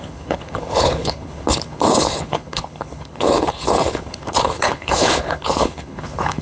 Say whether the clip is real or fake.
fake